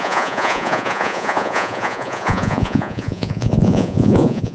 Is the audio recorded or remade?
remade